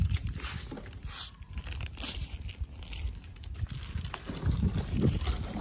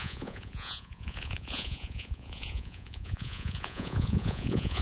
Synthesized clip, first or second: second